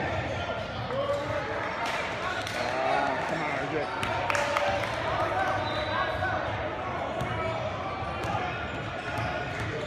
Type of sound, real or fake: real